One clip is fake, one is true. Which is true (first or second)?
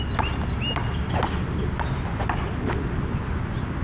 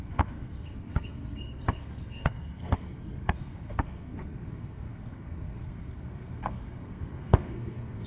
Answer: first